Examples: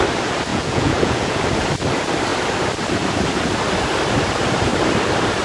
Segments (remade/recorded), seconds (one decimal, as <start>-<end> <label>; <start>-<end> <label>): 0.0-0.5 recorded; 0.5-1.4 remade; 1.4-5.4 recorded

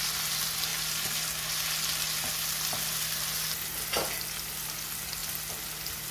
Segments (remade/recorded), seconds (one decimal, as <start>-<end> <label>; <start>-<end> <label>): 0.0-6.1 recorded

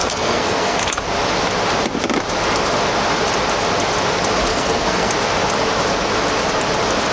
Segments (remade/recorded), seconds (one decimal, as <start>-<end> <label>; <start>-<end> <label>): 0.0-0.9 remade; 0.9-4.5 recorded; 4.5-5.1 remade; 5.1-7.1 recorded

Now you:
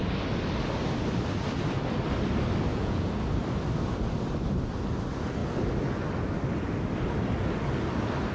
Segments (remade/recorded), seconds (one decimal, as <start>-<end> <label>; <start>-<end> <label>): 0.0-2.7 recorded; 2.7-3.2 remade; 3.2-8.3 recorded

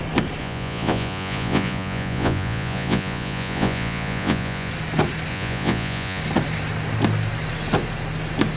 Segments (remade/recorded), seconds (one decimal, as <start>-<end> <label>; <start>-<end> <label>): 0.0-0.4 recorded; 0.4-4.7 remade; 4.7-5.3 recorded; 5.3-6.2 remade; 6.2-8.6 recorded